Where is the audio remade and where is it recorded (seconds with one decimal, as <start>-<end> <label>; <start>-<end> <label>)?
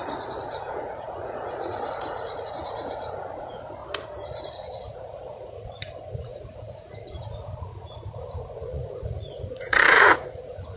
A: 0.0-3.8 remade; 3.8-4.5 recorded; 4.5-10.8 remade